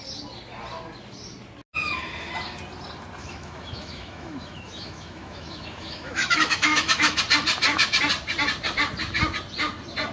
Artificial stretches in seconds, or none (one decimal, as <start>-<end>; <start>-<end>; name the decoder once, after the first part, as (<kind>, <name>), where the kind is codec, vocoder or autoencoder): 3.2-7.2 (autoencoder, DAC-VAE)